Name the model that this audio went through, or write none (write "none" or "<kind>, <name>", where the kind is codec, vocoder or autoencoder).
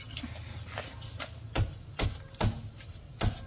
none